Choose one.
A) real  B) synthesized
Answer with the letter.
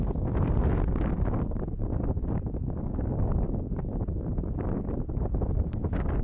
A